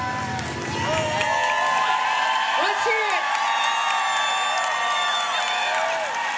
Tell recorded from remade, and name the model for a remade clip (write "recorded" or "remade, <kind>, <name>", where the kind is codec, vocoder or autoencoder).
recorded